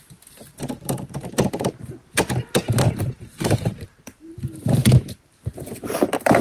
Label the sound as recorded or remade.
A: remade